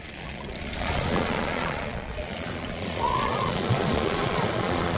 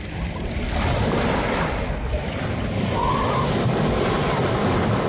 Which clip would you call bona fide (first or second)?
second